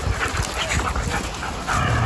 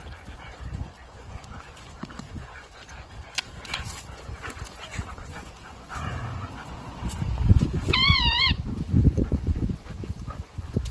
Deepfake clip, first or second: second